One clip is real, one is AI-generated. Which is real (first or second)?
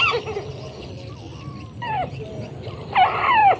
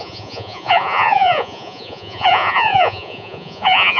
first